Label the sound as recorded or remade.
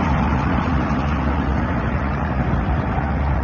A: remade